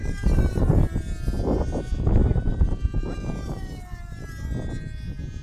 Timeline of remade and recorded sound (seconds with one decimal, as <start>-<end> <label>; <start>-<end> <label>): 0.0-0.6 remade; 0.6-2.2 recorded; 2.2-4.3 remade; 4.3-5.4 recorded